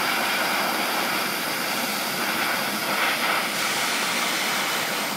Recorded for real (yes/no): no